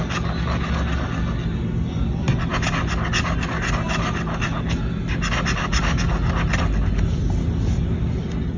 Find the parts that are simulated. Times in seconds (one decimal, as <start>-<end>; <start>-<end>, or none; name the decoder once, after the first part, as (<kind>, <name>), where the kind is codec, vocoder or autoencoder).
none